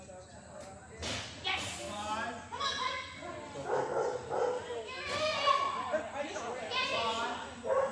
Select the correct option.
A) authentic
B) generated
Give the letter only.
A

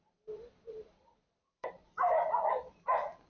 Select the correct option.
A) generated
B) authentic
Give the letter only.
A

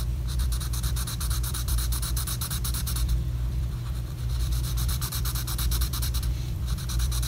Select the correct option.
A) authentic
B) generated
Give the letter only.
B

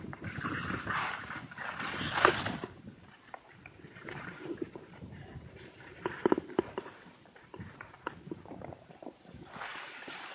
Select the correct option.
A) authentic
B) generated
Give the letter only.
B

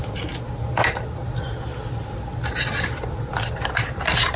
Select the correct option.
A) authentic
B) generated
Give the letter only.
A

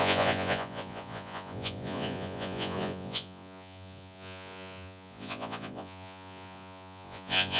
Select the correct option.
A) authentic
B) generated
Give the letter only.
B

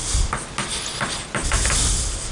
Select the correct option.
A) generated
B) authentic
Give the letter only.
B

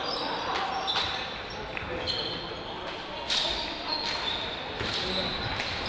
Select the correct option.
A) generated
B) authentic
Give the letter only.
B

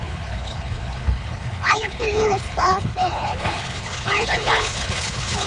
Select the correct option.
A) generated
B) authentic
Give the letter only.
A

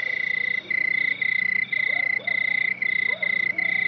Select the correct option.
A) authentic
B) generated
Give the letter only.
A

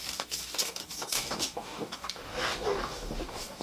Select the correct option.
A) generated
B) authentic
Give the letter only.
A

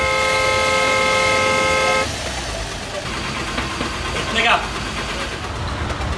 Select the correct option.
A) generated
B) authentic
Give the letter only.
B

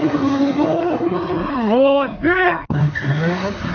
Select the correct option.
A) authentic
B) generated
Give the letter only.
B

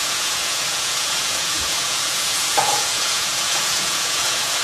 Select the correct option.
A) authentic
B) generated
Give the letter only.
B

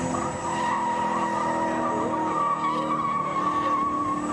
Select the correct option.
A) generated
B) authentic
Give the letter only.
B